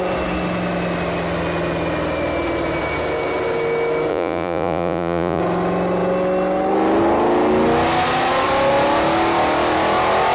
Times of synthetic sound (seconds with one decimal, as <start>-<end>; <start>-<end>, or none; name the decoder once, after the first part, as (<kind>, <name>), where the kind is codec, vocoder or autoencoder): 4.1-5.4 (vocoder, Vocos)